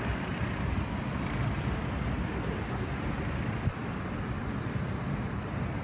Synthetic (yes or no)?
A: yes